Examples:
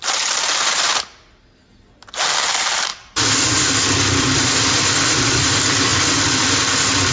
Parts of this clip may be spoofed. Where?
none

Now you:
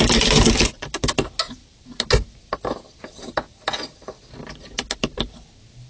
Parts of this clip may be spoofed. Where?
none

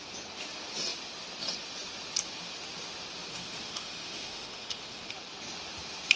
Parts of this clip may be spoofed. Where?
3.3-5.1 (autoencoder, DAC-VAE)

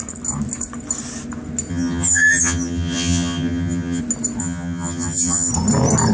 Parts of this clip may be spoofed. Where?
1.7-4.0 (vocoder, HiFi-GAN); 4.4-5.5

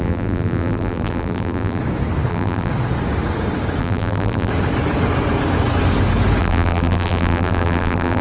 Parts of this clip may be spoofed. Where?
0.0-1.8 (vocoder, BigVGAN v2); 2.3-2.7; 3.8-4.5; 6.4-8.2

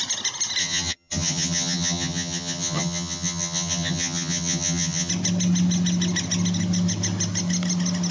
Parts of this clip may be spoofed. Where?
0.6-5.1 (vocoder, HiFi-GAN)

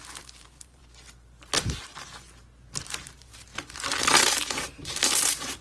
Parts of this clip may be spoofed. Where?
0.0-0.8 (vocoder, BigVGAN v2); 2.7-3.5; 4.2-5.6

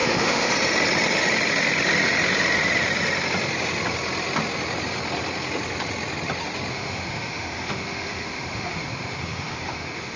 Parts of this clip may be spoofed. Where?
0.0-0.5 (autoencoder, DAC-VAE); 6.7-10.2